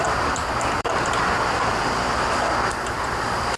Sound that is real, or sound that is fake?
fake